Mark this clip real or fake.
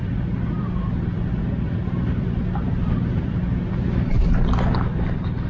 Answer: real